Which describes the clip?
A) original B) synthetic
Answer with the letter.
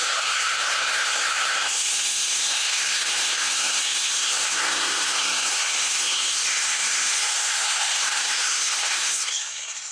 B